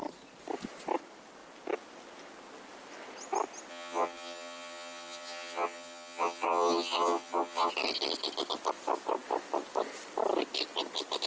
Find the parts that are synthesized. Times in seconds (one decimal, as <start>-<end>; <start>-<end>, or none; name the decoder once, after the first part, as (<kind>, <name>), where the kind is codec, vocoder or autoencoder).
3.7-7.7 (vocoder, HiFi-GAN)